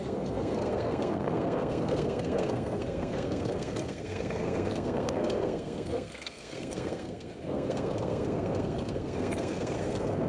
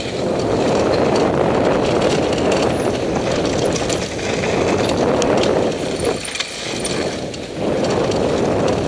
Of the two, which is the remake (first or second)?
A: first